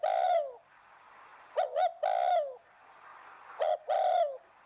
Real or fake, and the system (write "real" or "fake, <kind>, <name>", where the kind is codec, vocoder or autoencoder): real